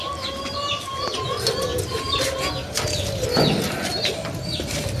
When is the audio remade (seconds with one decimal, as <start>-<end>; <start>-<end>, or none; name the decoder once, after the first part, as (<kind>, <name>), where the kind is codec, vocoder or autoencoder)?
none

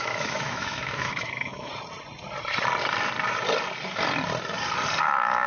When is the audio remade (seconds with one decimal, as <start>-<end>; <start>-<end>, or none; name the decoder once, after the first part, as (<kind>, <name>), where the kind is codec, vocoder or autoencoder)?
0.0-1.7 (autoencoder, DAC-VAE); 5.0-5.5

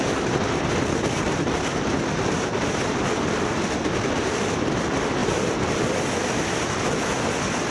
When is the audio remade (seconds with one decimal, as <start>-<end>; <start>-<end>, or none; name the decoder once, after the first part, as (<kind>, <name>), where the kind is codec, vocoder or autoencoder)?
none

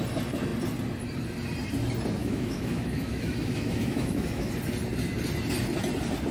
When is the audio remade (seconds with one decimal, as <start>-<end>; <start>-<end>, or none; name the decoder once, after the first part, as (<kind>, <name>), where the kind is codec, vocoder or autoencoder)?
2.2-4.5 (autoencoder, DAC-VAE)

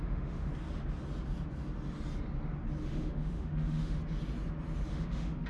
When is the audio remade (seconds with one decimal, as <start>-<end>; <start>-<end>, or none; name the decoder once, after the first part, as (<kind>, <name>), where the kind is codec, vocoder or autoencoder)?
0.0-0.5 (autoencoder, DAC-VAE); 2.8-4.0; 4.9-5.5

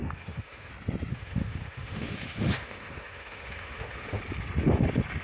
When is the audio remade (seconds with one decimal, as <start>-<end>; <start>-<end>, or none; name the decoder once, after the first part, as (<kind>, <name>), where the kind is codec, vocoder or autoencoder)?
0.0-0.7 (autoencoder, DAC-VAE); 1.1-4.2

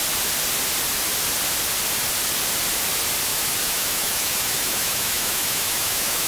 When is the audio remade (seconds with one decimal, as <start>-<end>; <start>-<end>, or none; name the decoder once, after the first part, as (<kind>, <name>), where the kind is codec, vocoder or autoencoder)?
3.3-6.3 (autoencoder, DAC-VAE)

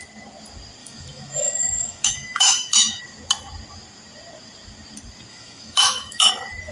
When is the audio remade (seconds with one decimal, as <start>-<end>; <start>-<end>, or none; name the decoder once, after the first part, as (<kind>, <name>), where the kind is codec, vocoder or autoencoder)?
0.8-3.0 (autoencoder, DAC-VAE); 5.3-6.3